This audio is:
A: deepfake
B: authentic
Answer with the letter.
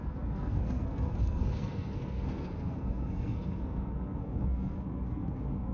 A